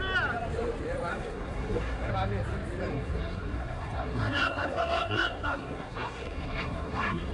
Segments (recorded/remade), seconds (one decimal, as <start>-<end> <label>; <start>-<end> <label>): 0.0-1.1 recorded; 1.1-2.1 remade; 2.1-2.9 recorded; 2.9-7.3 remade